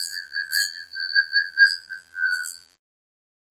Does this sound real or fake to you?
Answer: fake